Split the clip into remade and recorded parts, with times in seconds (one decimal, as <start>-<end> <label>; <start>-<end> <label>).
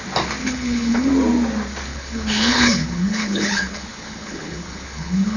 0.0-0.4 recorded; 0.4-1.1 remade; 1.1-1.9 recorded; 1.9-5.4 remade